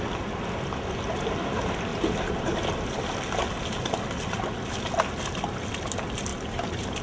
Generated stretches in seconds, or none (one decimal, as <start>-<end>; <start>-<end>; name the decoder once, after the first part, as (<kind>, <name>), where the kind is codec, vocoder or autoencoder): none

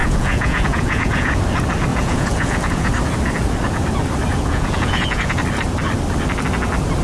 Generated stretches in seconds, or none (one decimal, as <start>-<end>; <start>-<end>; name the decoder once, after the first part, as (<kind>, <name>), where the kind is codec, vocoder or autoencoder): 0.0-1.4 (vocoder, Vocos); 1.9-2.9; 4.3-5.4

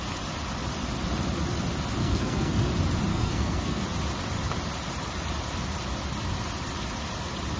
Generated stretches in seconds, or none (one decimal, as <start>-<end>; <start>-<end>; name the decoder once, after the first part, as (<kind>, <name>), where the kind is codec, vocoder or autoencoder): 2.0-2.7 (codec, SNAC); 3.1-3.8